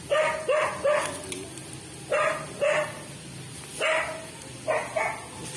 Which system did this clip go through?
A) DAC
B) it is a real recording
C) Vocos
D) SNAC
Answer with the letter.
B